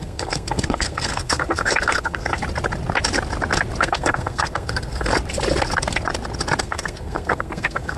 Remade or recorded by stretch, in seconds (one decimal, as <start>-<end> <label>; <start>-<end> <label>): 0.0-2.4 remade; 2.4-3.8 recorded; 3.8-5.1 remade; 5.1-6.6 recorded; 6.6-8.0 remade